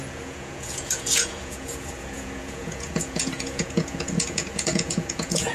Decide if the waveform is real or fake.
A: fake